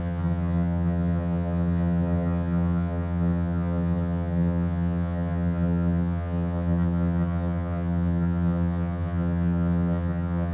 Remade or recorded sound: remade